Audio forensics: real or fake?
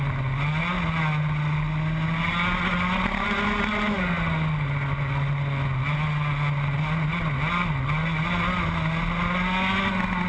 real